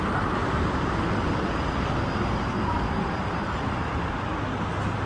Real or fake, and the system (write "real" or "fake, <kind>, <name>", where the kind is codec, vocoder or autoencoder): real